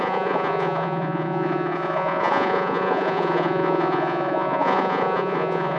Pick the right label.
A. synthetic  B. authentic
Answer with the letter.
A